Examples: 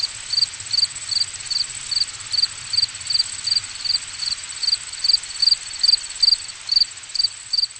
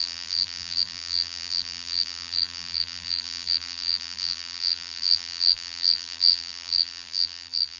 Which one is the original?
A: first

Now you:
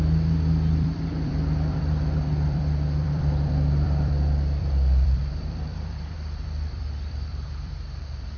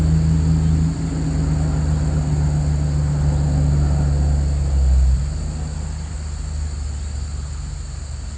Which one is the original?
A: second